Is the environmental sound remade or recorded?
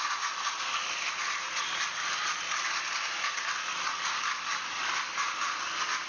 recorded